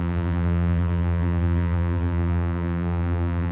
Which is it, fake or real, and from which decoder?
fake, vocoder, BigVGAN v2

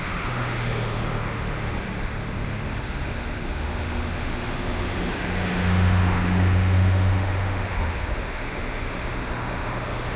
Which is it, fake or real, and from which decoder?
fake, autoencoder, DAC-VAE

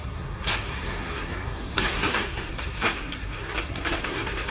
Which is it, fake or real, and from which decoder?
fake, codec, SNAC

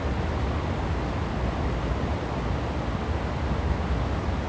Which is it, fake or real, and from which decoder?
real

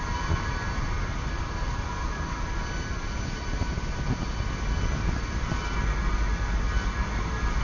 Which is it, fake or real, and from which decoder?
real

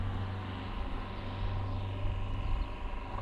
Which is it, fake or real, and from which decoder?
real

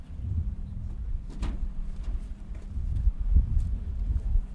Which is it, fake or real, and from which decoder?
fake, vocoder, BigVGAN v2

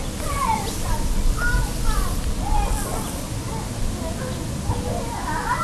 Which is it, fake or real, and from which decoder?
real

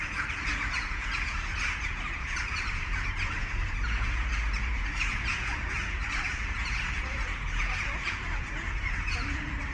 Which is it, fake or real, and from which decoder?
fake, vocoder, Vocos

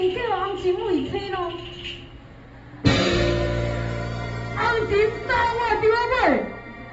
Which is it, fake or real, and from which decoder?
real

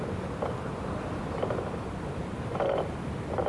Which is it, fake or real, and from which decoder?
real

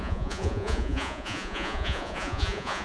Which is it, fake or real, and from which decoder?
fake, vocoder, Vocos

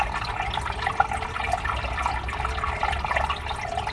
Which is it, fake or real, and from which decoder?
real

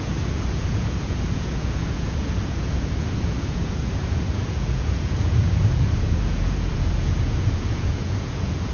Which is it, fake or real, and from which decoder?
fake, vocoder, Vocos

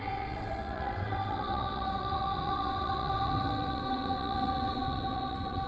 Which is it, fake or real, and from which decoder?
fake, vocoder, WaveNeXt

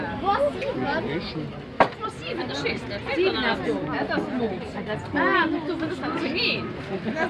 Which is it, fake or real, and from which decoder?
real